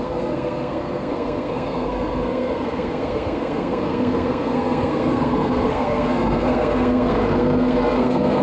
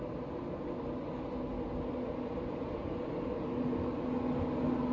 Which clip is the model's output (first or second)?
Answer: first